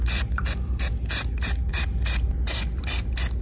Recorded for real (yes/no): yes